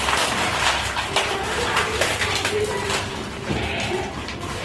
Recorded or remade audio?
remade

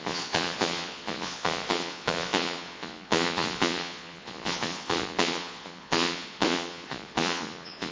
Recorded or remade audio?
remade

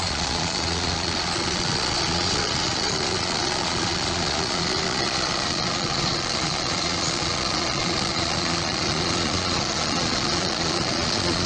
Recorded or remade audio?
remade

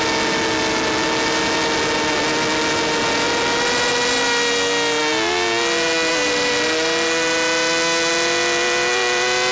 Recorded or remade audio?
recorded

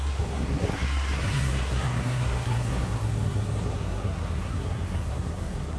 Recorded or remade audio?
remade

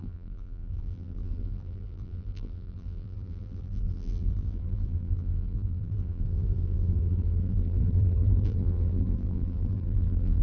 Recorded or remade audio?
remade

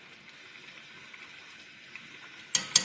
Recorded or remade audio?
recorded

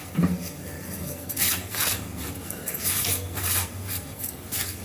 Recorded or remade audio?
remade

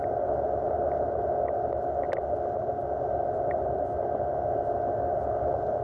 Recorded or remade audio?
recorded